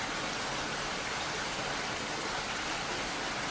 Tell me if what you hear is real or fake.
real